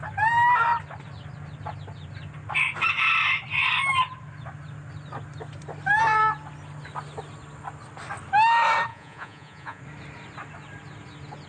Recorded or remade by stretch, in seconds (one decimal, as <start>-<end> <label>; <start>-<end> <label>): 0.0-8.9 recorded; 8.9-9.8 remade; 9.8-11.5 recorded